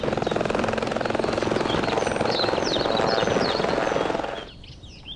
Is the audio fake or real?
real